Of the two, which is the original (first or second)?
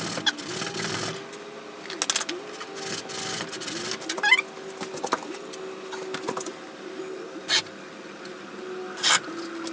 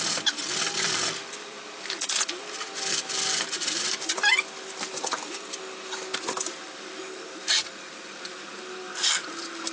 first